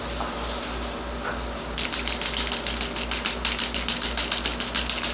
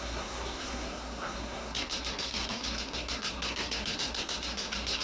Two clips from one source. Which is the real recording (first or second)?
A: first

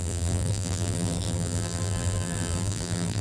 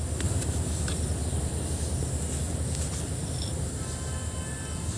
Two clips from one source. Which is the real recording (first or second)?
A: second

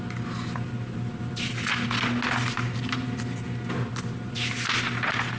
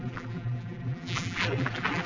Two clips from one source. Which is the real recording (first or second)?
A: first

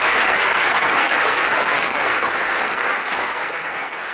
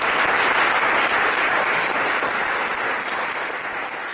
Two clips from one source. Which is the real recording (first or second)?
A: second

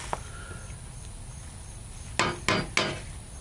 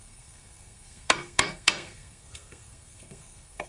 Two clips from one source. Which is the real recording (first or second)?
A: first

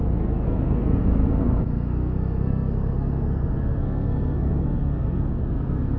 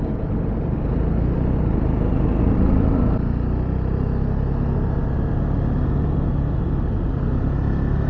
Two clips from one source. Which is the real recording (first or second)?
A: second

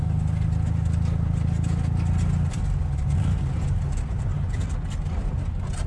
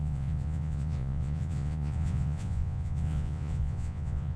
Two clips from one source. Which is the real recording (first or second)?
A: first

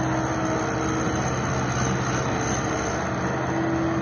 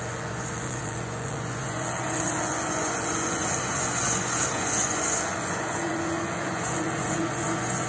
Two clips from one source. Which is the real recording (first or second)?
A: first